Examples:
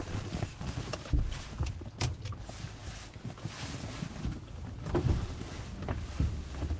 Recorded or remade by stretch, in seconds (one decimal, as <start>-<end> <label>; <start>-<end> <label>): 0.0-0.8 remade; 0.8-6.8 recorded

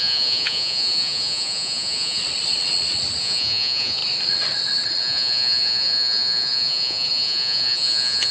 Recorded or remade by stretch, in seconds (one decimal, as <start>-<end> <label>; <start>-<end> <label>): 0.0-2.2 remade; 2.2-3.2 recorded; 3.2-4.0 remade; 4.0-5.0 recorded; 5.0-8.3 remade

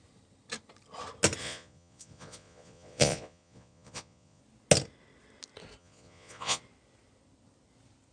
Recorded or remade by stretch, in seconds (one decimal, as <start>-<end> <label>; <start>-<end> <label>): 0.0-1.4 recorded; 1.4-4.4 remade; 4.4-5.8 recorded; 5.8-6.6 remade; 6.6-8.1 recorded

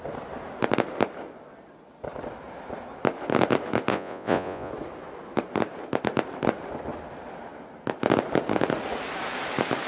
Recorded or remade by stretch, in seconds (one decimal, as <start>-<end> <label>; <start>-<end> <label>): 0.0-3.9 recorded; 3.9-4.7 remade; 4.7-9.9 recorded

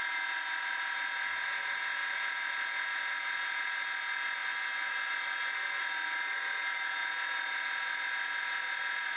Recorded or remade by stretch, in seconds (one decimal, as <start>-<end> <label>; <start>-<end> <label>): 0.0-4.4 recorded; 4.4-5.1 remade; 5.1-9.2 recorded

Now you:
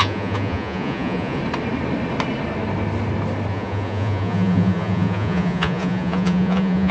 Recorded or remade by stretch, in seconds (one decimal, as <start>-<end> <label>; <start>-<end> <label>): 0.0-1.4 remade; 1.4-3.5 recorded; 3.5-6.9 remade

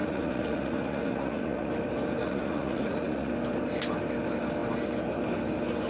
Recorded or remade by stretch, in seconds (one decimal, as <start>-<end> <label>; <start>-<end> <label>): 0.0-1.7 remade; 1.7-2.2 recorded; 2.2-3.3 remade; 3.3-5.9 recorded

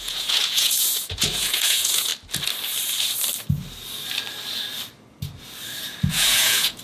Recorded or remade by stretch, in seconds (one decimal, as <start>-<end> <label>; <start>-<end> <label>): 0.0-2.1 remade; 2.1-6.1 recorded; 6.1-6.8 remade